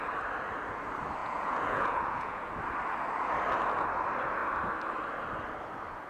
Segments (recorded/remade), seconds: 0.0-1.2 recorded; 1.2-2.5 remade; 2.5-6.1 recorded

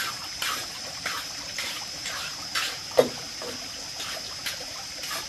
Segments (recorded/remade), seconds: 0.0-0.6 recorded; 0.6-2.4 remade; 2.4-5.3 recorded

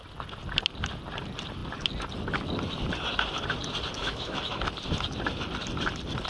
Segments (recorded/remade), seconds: 0.0-4.0 recorded; 4.0-4.7 remade; 4.7-6.3 recorded

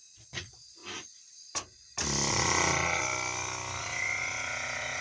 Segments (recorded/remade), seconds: 0.0-0.8 remade; 0.8-2.3 recorded; 2.3-3.0 remade; 3.0-3.8 recorded; 3.8-5.0 remade

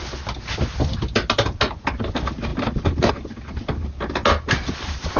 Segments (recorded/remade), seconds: 0.0-5.2 recorded

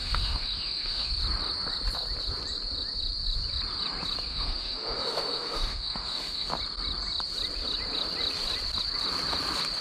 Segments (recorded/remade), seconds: 0.0-1.1 remade; 1.1-4.3 recorded; 4.3-6.5 remade; 6.5-9.8 recorded

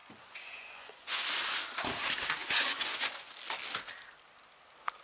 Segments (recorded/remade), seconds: 0.0-1.2 remade; 1.2-2.4 recorded; 2.4-3.3 remade; 3.3-5.0 recorded